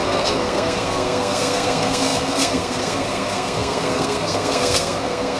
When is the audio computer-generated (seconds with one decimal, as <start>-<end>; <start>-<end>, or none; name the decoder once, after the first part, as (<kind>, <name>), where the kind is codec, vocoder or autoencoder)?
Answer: 0.0-5.4 (codec, SNAC)